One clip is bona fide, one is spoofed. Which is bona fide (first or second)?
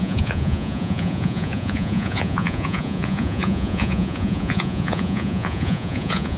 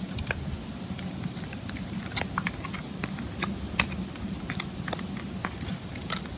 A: second